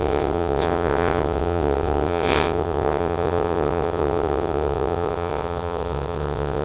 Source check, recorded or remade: remade